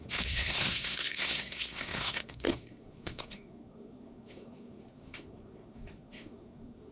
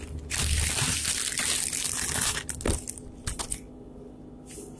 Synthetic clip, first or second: first